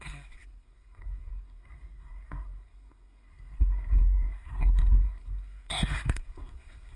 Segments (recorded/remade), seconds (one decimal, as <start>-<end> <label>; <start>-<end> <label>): 0.0-7.0 remade